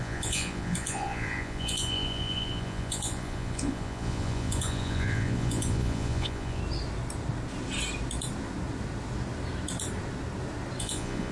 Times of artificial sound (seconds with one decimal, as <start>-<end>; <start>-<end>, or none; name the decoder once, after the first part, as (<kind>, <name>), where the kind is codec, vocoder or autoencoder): 0.0-6.6 (vocoder, Vocos); 10.8-11.3